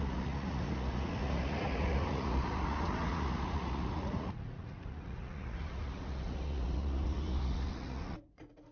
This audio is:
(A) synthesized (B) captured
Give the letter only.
A